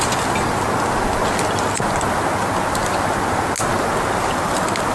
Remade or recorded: recorded